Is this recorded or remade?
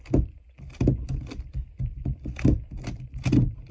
recorded